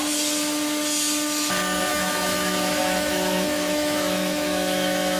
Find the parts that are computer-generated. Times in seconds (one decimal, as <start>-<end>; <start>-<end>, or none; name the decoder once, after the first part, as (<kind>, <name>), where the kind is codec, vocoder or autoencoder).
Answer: 1.9-5.2 (autoencoder, DAC-VAE)